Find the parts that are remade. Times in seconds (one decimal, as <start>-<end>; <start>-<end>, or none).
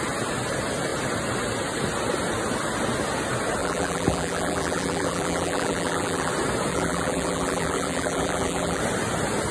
3.6-6.3; 6.7-8.8